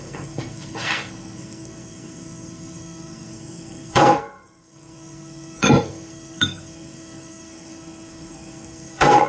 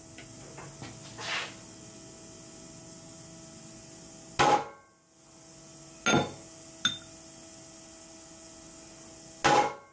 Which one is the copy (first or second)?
first